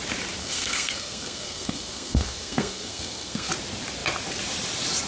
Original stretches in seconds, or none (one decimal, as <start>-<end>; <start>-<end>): 0.0-0.4; 3.5-5.1